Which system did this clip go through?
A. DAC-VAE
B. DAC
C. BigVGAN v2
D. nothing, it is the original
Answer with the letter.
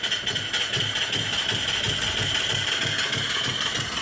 D